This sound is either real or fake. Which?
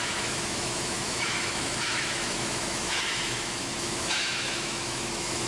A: fake